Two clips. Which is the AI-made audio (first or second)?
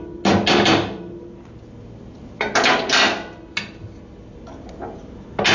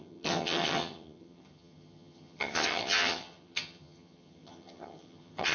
second